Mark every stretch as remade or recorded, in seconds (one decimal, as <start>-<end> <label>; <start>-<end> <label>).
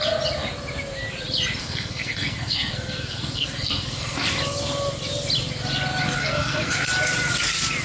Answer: 0.0-1.6 recorded; 1.6-4.3 remade; 4.3-6.2 recorded; 6.2-6.9 remade; 6.9-7.8 recorded